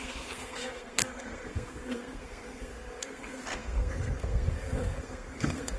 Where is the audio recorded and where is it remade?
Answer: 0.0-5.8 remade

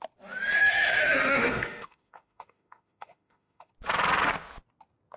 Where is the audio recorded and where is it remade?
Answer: 0.0-0.6 recorded; 0.6-3.7 remade; 3.7-5.2 recorded

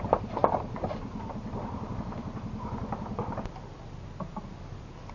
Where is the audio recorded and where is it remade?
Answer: 0.0-5.1 recorded

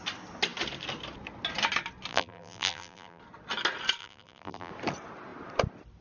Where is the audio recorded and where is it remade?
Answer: 0.0-2.1 recorded; 2.1-3.2 remade; 3.2-4.0 recorded; 4.0-4.7 remade; 4.7-6.0 recorded

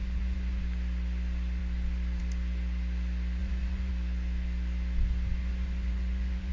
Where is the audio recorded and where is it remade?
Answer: 0.0-0.6 remade; 0.6-3.4 recorded; 3.4-3.9 remade; 3.9-5.4 recorded; 5.4-6.5 remade